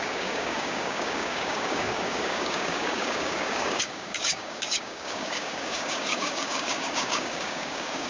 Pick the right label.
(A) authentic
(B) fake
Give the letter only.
B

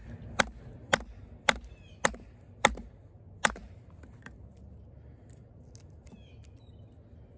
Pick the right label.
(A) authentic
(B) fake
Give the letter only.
A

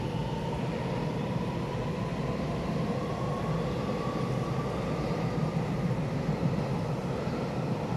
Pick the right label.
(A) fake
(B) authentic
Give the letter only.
B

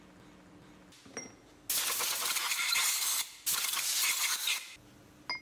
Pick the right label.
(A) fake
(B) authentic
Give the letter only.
B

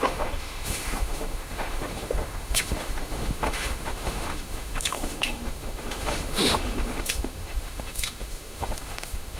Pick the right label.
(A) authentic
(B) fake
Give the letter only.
B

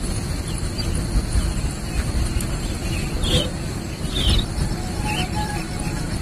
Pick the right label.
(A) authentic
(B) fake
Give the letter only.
A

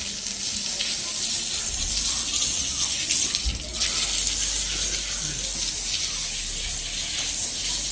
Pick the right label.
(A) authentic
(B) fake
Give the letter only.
A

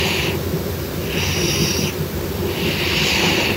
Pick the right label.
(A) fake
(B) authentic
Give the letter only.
A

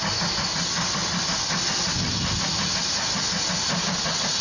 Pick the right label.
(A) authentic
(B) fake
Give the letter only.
A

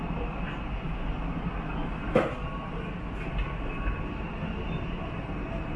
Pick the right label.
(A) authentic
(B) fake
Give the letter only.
A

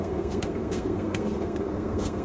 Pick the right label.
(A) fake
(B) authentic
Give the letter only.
A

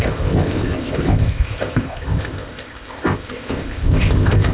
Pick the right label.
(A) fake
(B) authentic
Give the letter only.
A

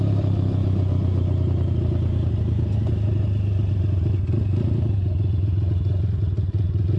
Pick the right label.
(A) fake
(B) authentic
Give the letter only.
B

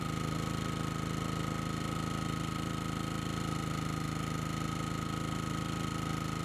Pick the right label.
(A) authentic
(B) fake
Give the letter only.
A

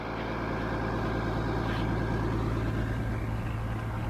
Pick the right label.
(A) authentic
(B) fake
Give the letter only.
A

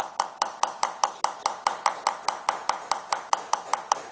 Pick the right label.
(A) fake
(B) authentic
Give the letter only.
A